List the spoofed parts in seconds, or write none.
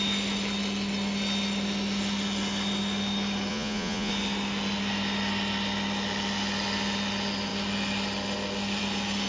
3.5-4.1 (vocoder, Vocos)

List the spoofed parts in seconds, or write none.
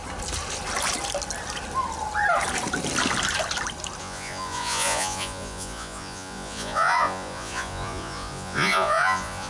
4.0-9.5 (vocoder, Vocos)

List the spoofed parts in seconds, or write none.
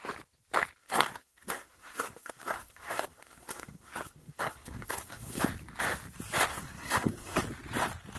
0.8-5.4 (codec, SNAC); 6.5-7.4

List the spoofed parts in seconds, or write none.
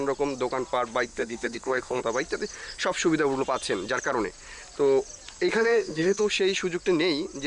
1.1-2.0 (codec, SNAC); 5.5-6.2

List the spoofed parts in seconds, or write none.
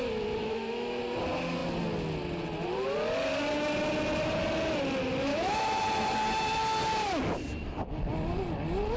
0.4-1.0 (autoencoder, DAC-VAE); 5.3-5.8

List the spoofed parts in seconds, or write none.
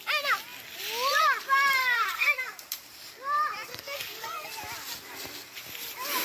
1.8-2.4 (codec, SNAC); 3.7-4.5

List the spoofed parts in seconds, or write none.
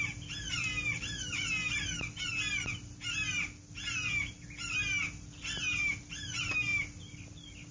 none